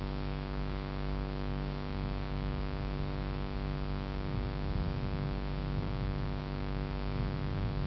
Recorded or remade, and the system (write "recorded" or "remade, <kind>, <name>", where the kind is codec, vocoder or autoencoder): remade, codec, DAC